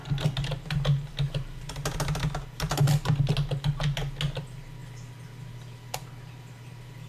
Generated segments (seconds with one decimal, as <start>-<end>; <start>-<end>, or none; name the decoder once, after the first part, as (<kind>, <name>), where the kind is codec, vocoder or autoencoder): none